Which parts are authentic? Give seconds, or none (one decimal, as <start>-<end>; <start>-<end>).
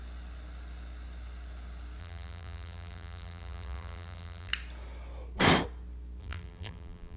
0.0-2.0; 4.5-6.2